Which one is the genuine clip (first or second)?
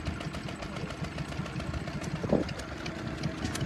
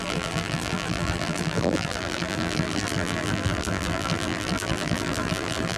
first